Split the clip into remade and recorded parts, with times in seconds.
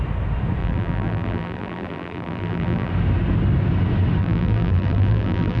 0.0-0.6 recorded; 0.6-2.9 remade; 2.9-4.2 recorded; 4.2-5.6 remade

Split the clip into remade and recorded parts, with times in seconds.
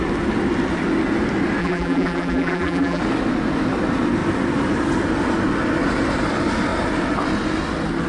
0.0-1.6 recorded; 1.6-3.0 remade; 3.0-8.1 recorded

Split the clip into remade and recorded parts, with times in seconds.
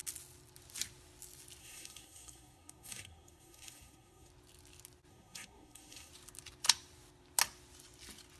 0.0-1.6 recorded; 1.6-4.3 remade; 4.3-5.1 recorded; 5.1-6.1 remade; 6.1-8.4 recorded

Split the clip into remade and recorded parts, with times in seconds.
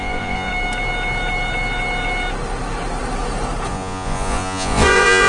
0.0-0.5 remade; 0.5-3.7 recorded; 3.7-5.3 remade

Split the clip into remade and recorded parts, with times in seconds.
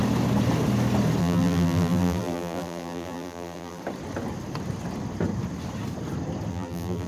0.0-1.2 recorded; 1.2-3.8 remade; 3.8-6.5 recorded; 6.5-7.1 remade